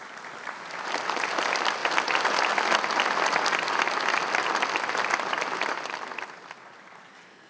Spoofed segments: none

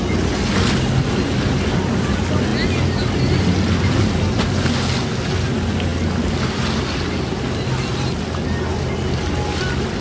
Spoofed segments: none

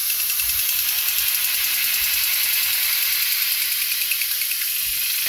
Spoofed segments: none

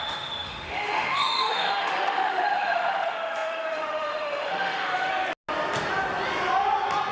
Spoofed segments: 0.0-5.1 (autoencoder, DAC-VAE)

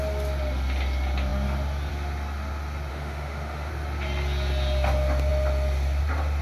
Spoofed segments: 2.9-3.7 (autoencoder, DAC-VAE)

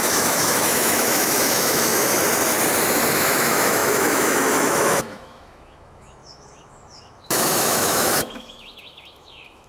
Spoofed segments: 0.0-2.2 (autoencoder, DAC-VAE); 3.1-9.7

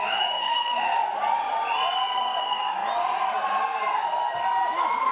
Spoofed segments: 0.0-0.9 (autoencoder, DAC-VAE); 2.4-2.8; 4.6-5.1

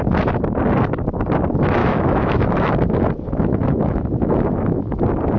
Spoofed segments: 1.8-5.0 (autoencoder, DAC-VAE)